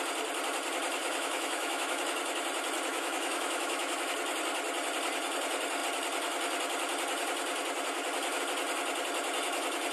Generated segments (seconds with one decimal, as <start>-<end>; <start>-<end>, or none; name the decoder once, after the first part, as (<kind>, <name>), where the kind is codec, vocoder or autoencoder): 1.0-2.0 (autoencoder, DAC-VAE); 2.9-4.1